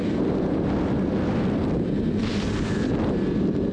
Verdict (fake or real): fake